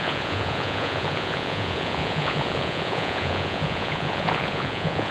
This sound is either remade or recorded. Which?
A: remade